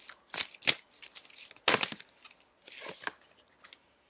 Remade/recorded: recorded